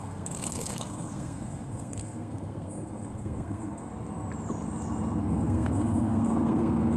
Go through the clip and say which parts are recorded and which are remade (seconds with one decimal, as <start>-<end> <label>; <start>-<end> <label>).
0.0-3.9 remade; 3.9-5.2 recorded; 5.2-7.0 remade